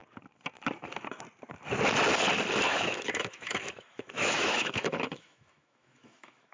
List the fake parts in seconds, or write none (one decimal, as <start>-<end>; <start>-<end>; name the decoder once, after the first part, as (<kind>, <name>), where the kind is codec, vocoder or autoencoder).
2.7-6.5 (autoencoder, DAC-VAE)